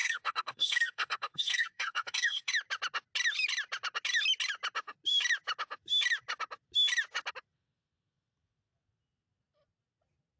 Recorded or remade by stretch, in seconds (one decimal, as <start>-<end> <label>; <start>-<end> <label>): 0.0-2.5 remade; 2.5-10.4 recorded